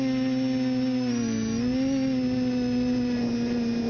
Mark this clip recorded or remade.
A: recorded